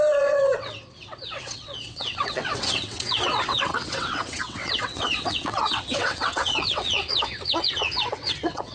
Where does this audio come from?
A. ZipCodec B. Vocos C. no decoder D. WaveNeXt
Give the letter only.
D